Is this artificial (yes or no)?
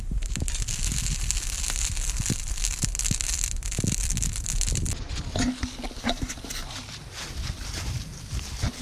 no